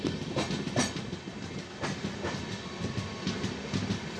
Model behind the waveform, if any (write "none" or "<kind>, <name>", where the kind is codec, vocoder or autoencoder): none